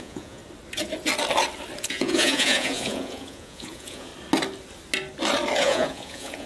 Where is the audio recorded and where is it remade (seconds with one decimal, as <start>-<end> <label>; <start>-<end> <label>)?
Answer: 0.0-0.4 remade; 0.4-1.8 recorded; 1.8-4.1 remade; 4.1-5.6 recorded; 5.6-6.5 remade